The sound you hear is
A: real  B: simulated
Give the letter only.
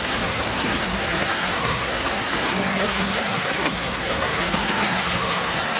B